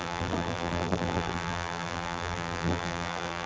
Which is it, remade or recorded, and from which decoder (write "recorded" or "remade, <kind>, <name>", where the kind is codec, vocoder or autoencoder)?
remade, vocoder, BigVGAN v2